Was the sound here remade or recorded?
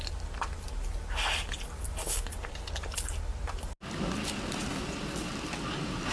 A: recorded